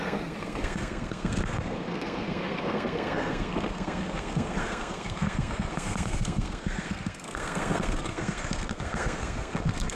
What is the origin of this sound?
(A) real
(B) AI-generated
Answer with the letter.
B